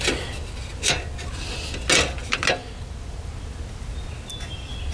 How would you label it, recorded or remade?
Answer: recorded